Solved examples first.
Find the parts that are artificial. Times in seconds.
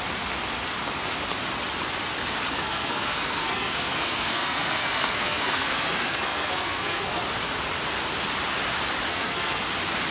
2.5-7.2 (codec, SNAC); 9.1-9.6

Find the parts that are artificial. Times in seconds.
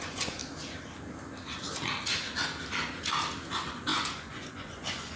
0.0-0.4 (vocoder, Vocos); 3.5-5.2